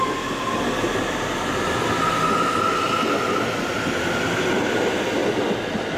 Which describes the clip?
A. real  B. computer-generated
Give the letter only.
A